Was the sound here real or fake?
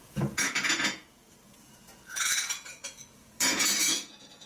fake